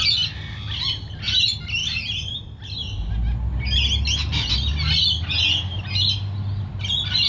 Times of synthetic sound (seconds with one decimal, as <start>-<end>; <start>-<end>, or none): 1.8-3.1